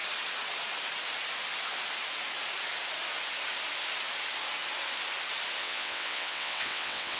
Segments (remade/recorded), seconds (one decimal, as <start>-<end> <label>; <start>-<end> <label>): 0.0-5.6 recorded; 5.6-7.2 remade